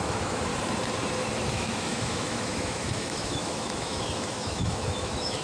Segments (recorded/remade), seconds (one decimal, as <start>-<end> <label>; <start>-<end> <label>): 0.0-0.5 remade; 0.5-1.5 recorded; 1.5-5.4 remade